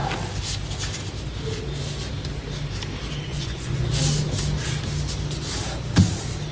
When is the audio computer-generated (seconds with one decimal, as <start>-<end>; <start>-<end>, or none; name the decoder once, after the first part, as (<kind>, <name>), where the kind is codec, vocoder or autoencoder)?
3.3-4.0 (vocoder, Vocos)